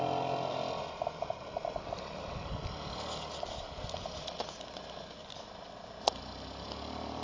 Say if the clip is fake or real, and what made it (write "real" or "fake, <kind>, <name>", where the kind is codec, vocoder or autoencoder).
real